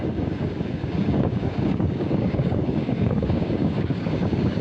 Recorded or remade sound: remade